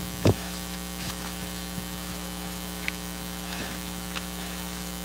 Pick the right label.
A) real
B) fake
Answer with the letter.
B